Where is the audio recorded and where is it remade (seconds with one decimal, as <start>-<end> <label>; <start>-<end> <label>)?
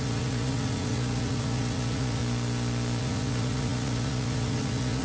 0.0-2.2 remade; 2.2-3.0 recorded; 3.0-5.0 remade